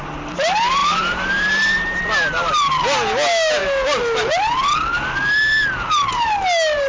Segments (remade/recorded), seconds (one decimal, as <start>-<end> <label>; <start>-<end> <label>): 0.0-0.8 recorded; 0.8-2.0 remade; 2.0-6.9 recorded